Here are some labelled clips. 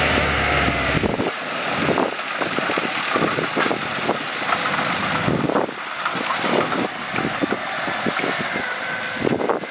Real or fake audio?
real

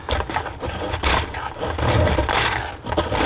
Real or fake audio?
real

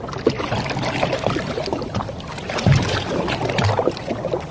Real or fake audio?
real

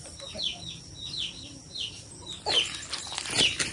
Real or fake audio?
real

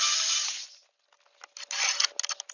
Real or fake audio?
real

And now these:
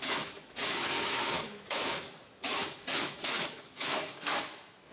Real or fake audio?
fake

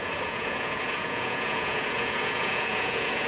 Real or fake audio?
fake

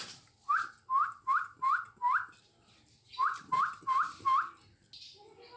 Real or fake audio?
real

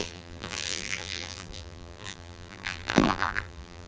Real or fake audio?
fake